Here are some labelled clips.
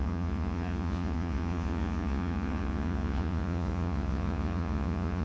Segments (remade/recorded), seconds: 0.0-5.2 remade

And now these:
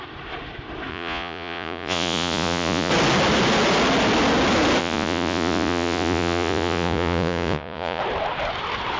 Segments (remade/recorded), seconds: 0.0-0.9 recorded; 0.9-2.9 remade; 2.9-4.8 recorded; 4.8-8.0 remade; 8.0-9.0 recorded

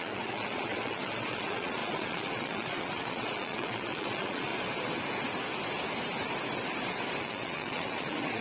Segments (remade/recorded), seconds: 0.0-4.5 remade; 4.5-7.2 recorded; 7.2-8.4 remade

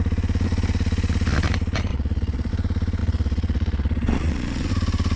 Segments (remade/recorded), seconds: 0.0-1.9 recorded; 1.9-2.5 remade; 2.5-3.0 recorded; 3.0-4.7 remade; 4.7-5.2 recorded

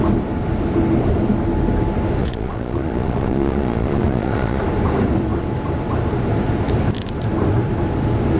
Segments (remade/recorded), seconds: 0.0-2.2 recorded; 2.2-4.6 remade; 4.6-8.4 recorded